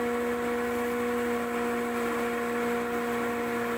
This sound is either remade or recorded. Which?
recorded